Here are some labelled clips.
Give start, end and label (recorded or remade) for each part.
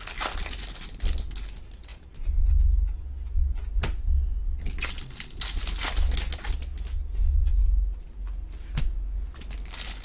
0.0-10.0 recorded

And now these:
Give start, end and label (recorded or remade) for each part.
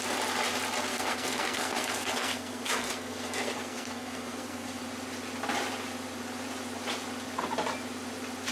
0.0-0.9 recorded; 0.9-4.8 remade; 4.8-8.5 recorded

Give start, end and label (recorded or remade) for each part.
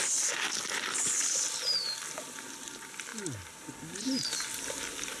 0.0-5.2 recorded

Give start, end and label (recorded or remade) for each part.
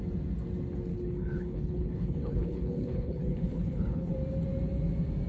0.0-0.9 recorded; 0.9-4.1 remade; 4.1-5.3 recorded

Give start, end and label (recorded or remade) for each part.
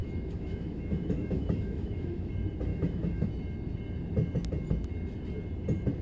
0.0-2.3 remade; 2.3-2.7 recorded; 2.7-3.3 remade; 3.3-6.0 recorded